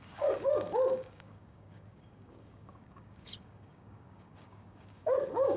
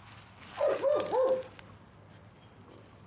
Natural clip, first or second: second